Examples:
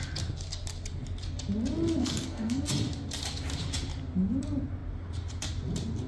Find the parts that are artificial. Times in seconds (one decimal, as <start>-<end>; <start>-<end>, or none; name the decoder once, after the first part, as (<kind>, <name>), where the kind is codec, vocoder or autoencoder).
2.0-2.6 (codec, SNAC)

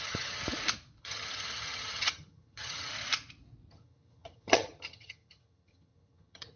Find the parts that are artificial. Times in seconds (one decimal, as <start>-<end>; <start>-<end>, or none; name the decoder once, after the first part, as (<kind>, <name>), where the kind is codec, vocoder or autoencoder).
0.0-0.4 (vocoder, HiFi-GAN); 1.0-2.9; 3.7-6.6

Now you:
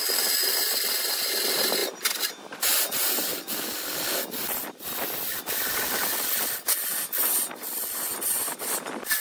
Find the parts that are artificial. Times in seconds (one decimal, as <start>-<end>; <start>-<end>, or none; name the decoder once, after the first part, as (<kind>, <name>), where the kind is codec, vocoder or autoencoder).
0.4-1.3 (vocoder, BigVGAN v2); 1.8-6.5; 8.1-9.2